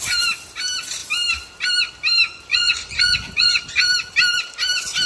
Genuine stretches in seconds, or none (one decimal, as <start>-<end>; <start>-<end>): 0.0-2.5; 3.6-5.1